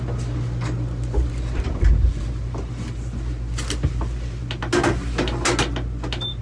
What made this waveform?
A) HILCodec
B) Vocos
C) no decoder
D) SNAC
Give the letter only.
C